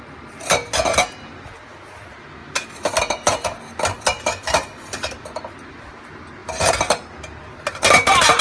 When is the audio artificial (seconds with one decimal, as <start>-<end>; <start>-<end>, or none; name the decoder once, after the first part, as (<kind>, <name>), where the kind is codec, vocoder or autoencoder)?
none